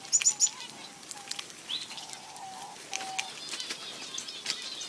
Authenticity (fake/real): real